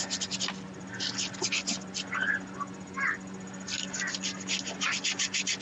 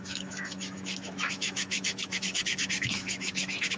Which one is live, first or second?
first